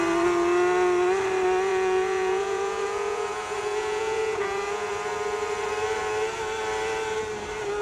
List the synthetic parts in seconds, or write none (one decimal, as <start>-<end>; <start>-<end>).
1.7-4.9